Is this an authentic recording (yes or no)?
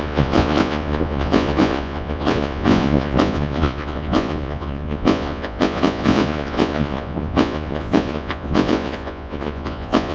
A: no